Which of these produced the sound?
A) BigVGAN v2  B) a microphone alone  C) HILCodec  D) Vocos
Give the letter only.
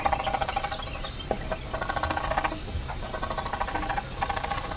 B